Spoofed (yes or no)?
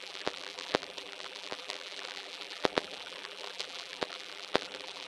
yes